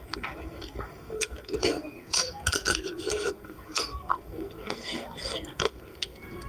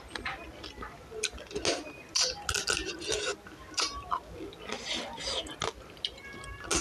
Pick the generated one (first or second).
first